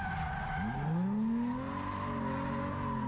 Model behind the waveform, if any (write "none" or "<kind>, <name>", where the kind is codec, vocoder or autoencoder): none